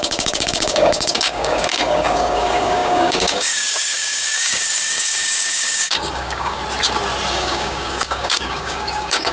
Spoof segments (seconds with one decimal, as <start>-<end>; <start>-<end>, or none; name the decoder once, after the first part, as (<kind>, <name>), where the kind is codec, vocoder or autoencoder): 0.0-6.6 (codec, DAC); 7.3-9.3